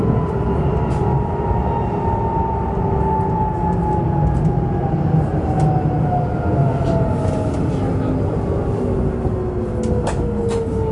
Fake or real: real